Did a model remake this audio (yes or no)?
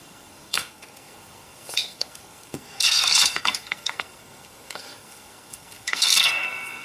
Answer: yes